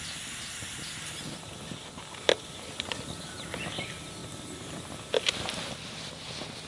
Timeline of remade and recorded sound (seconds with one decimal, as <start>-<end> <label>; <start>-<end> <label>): 0.0-6.7 recorded